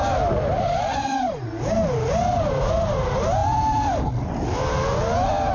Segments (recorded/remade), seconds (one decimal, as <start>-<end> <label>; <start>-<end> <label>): 0.0-5.5 recorded

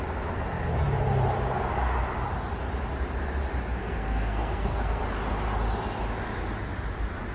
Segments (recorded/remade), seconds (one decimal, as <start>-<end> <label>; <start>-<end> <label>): 0.0-3.8 recorded; 3.8-5.0 remade; 5.0-7.3 recorded

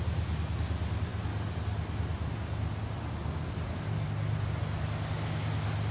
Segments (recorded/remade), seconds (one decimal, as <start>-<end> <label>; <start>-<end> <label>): 0.0-5.9 recorded

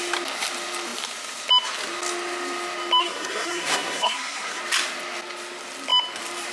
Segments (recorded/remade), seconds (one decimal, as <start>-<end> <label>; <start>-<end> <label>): 0.0-3.0 recorded; 3.0-4.6 remade; 4.6-6.5 recorded

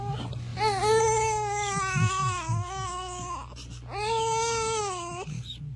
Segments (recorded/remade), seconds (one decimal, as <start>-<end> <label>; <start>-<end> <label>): 0.0-5.8 recorded

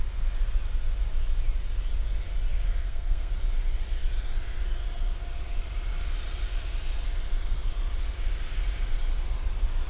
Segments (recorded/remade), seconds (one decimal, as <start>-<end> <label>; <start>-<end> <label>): 0.0-2.8 recorded; 2.8-3.3 remade; 3.3-9.9 recorded

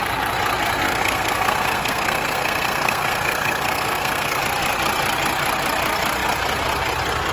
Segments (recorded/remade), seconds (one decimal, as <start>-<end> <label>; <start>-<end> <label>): 0.0-0.8 recorded; 0.8-4.4 remade; 4.4-7.3 recorded